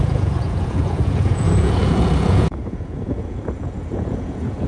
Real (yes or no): no